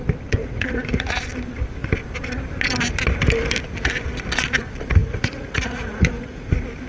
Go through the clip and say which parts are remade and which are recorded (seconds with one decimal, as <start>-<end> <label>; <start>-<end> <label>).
0.0-0.4 recorded; 0.4-1.1 remade; 1.1-5.0 recorded; 5.0-6.5 remade; 6.5-6.9 recorded